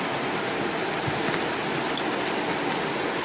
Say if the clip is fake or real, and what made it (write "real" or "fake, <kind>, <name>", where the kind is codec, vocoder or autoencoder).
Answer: real